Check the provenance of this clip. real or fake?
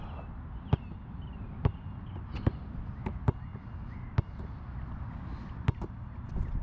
real